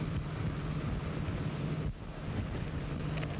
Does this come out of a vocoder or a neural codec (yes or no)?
no